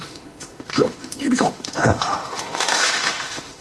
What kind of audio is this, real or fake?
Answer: fake